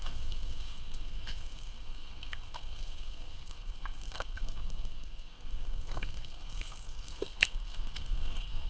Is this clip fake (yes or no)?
yes